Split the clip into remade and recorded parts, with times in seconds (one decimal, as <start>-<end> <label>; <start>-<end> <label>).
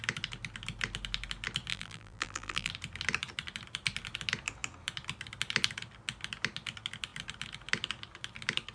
0.0-1.7 recorded; 1.7-2.7 remade; 2.7-8.7 recorded